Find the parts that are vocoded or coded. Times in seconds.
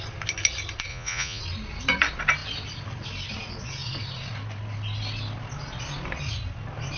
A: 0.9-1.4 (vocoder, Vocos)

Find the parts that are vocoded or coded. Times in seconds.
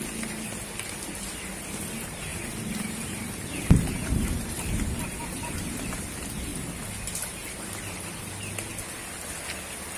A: 2.3-6.1 (vocoder, BigVGAN v2)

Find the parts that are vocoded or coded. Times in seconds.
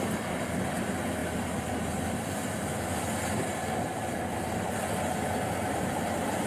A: none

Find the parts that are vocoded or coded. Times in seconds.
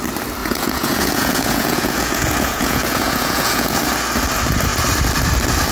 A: 0.4-3.8 (vocoder, Vocos)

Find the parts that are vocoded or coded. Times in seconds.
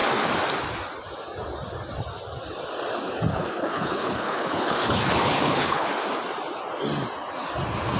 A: 3.3-5.9 (codec, HILCodec)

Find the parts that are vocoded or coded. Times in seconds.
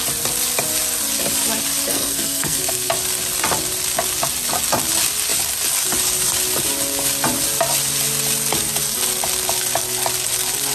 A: 1.9-2.9 (codec, SNAC)